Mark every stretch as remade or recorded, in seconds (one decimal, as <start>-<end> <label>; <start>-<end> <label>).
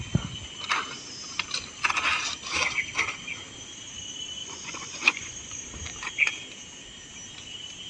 0.0-4.4 recorded; 4.4-5.6 remade; 5.6-7.9 recorded